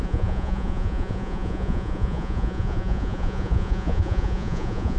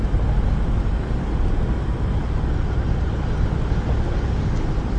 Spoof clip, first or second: first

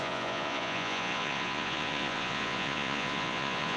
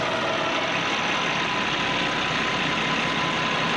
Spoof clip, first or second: first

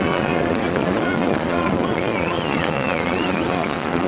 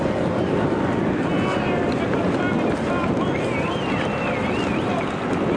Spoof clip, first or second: first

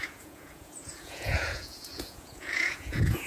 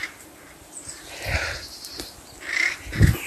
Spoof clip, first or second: first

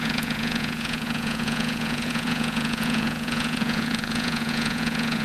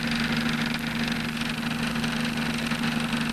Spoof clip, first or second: first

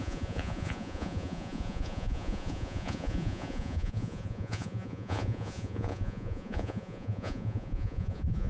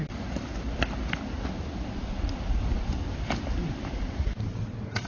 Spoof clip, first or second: first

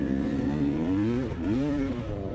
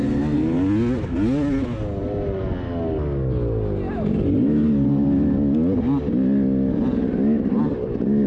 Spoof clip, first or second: first